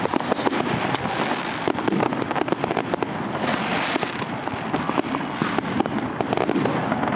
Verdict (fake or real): real